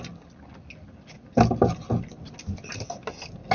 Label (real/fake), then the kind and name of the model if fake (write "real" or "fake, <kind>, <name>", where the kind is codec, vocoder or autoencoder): real